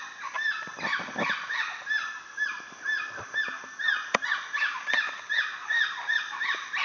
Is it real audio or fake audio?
real